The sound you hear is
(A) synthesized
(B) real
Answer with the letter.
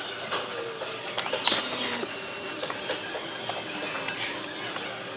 B